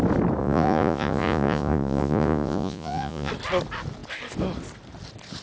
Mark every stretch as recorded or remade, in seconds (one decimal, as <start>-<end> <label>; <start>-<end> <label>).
0.0-0.4 recorded; 0.4-3.3 remade; 3.3-5.4 recorded